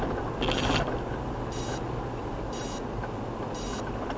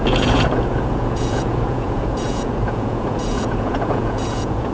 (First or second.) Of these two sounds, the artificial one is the second